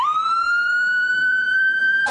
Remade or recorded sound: remade